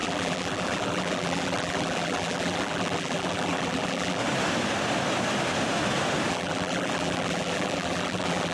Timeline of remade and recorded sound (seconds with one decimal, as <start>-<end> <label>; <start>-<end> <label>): 0.0-4.2 remade; 4.2-6.3 recorded; 6.3-8.5 remade